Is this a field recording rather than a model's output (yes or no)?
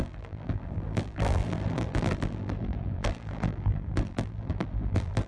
no